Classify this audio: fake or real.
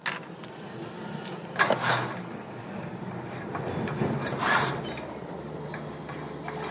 real